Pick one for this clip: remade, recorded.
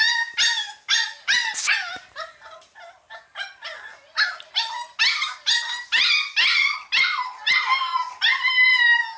recorded